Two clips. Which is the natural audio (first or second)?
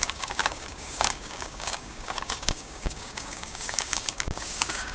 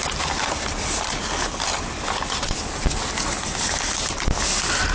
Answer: second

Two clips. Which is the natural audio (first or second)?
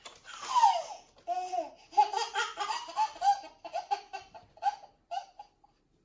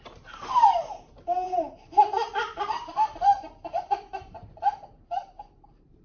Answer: first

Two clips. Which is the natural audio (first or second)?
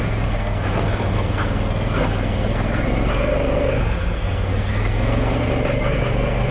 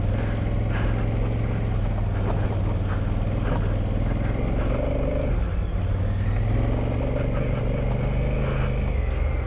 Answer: second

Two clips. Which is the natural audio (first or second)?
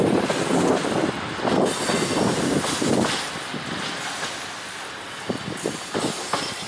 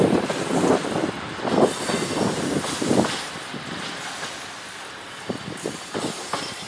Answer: first